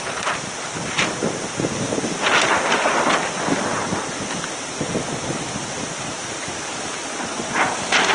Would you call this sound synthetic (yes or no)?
no